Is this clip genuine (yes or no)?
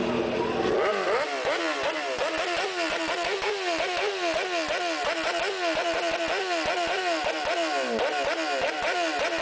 yes